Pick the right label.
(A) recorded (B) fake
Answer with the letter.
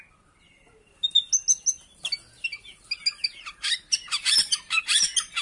A